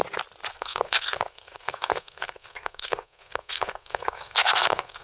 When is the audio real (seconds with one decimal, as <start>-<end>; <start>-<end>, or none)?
0.0-0.5